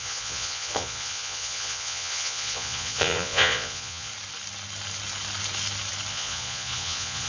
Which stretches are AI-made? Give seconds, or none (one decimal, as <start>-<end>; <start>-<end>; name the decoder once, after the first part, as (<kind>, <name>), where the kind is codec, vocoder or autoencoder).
0.0-4.1 (vocoder, Vocos); 6.1-7.3